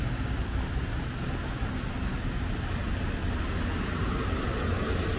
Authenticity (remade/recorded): recorded